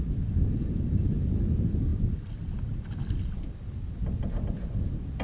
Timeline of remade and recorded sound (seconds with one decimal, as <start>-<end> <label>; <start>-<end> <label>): 0.0-5.2 recorded